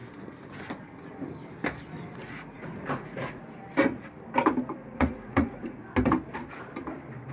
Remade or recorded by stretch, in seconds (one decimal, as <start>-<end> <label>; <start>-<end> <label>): 0.0-2.2 recorded; 2.2-3.4 remade; 3.4-4.8 recorded; 4.8-5.8 remade; 5.8-7.3 recorded